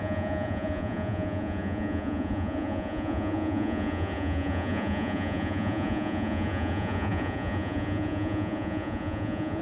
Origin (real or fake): fake